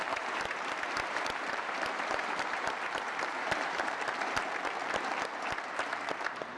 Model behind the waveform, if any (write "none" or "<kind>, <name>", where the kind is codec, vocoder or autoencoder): vocoder, BigVGAN v2